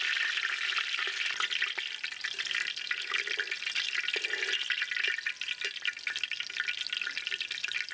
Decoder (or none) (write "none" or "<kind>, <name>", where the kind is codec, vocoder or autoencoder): none